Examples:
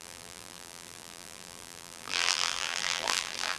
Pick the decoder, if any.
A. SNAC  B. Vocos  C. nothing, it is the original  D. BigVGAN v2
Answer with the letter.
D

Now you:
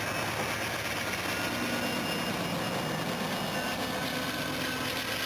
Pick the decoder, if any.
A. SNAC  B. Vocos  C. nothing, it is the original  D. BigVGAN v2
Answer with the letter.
C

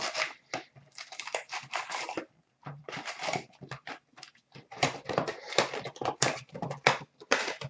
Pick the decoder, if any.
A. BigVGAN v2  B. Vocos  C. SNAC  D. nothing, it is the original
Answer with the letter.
A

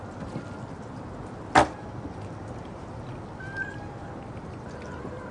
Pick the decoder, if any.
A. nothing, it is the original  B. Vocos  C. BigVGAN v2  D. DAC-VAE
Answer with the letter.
A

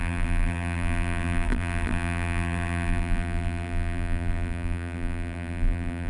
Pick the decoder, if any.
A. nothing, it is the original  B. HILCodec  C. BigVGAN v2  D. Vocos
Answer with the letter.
C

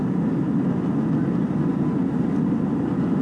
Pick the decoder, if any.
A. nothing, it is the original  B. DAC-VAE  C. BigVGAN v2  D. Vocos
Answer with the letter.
A